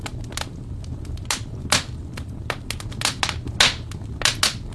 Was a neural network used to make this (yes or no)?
no